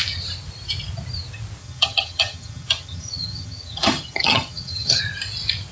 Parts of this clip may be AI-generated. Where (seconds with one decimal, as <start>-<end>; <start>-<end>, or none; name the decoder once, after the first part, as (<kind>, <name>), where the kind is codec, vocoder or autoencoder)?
1.6-5.0 (vocoder, HiFi-GAN)